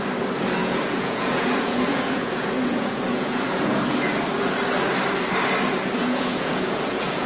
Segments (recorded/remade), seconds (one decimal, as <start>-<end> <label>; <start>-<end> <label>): 0.0-0.6 recorded; 0.6-4.1 remade; 4.1-6.0 recorded; 6.0-7.3 remade